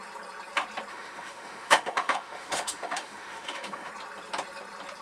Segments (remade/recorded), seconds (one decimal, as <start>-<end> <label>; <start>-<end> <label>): 0.0-0.9 recorded; 0.9-3.9 remade; 3.9-5.0 recorded